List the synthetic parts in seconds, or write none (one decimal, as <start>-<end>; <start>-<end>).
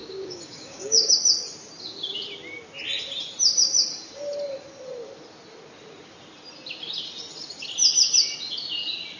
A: 0.0-1.1